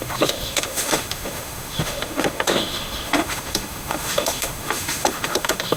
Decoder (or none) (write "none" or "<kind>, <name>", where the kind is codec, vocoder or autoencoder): autoencoder, DAC-VAE